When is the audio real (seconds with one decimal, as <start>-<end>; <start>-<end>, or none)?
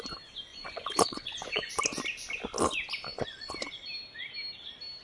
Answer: 0.0-0.5; 1.7-3.1; 3.8-5.0